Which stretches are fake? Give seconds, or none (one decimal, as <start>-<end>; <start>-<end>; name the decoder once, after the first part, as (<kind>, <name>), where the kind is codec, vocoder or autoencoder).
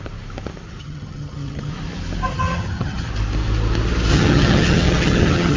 0.8-1.7 (vocoder, HiFi-GAN); 2.3-3.1; 4.1-5.6